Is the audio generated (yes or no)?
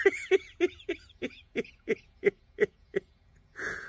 yes